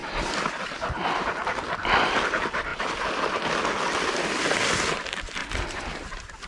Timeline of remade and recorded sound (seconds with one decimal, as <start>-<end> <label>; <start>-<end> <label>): 0.0-2.7 recorded; 2.7-3.2 remade; 3.2-5.4 recorded; 5.4-6.5 remade